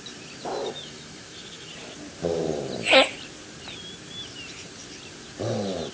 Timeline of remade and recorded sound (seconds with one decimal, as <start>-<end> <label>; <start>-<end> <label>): 0.0-0.6 recorded; 0.6-1.7 remade; 1.7-5.9 recorded